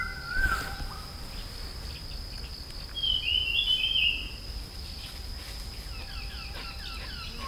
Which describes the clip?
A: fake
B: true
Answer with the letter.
B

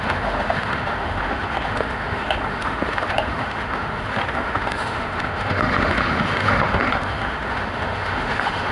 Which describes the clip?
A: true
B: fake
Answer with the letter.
B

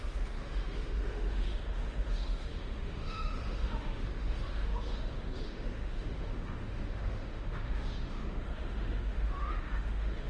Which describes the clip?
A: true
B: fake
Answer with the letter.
B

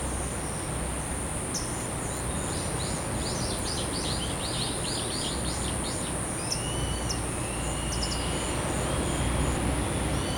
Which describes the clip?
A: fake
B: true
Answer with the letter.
B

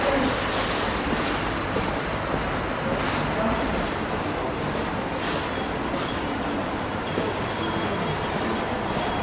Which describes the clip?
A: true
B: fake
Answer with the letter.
A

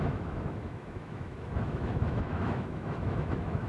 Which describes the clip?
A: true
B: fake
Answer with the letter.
B